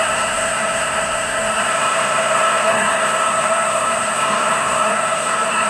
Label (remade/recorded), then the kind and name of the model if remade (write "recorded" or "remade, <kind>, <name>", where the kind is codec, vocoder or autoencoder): remade, codec, SNAC